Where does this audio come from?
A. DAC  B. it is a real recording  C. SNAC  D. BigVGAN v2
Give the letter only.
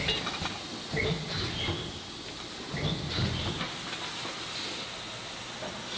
B